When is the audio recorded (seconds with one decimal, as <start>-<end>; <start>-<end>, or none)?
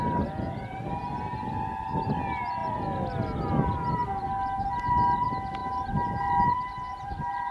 0.0-7.5